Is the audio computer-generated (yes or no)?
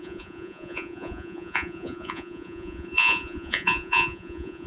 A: yes